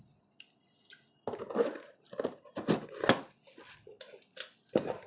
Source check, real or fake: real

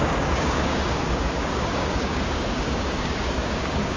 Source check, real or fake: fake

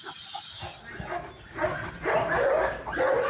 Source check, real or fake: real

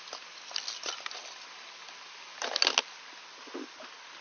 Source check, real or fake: real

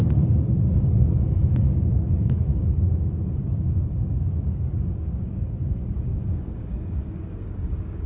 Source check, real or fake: fake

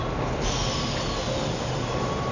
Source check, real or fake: real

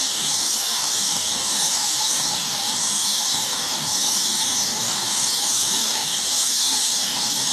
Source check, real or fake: fake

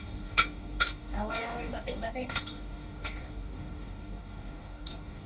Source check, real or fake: fake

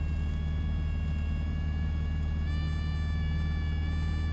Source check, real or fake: real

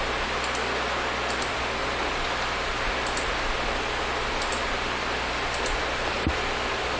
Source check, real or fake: real